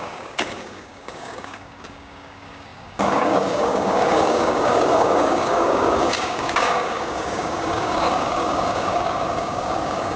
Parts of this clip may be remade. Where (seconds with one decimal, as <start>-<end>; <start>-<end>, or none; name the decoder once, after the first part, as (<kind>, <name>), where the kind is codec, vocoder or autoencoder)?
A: 0.0-10.2 (codec, DAC)